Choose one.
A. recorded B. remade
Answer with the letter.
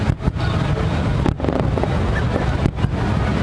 A